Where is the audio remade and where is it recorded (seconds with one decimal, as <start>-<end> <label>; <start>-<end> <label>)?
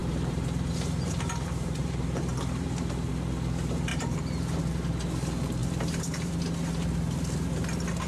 0.0-3.1 remade; 3.1-3.9 recorded; 3.9-4.6 remade; 4.6-5.6 recorded; 5.6-6.4 remade; 6.4-8.1 recorded